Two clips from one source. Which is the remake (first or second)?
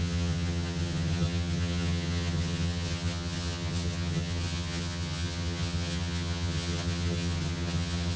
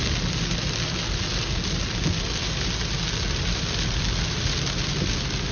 first